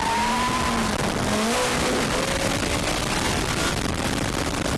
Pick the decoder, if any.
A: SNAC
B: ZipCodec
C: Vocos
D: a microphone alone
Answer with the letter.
D